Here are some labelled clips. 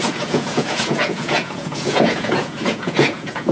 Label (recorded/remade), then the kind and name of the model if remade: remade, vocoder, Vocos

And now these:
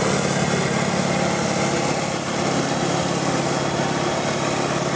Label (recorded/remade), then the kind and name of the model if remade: recorded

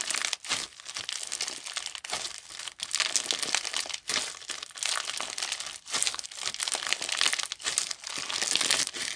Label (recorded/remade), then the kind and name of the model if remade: recorded